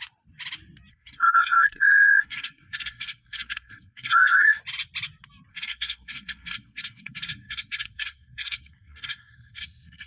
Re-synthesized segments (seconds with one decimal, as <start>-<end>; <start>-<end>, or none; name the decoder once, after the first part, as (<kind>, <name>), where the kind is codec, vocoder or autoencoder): 0.9-4.6 (codec, SNAC); 5.5-10.1